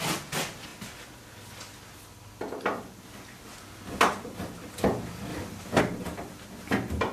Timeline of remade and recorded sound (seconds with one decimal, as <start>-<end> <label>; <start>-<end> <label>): 0.0-7.1 recorded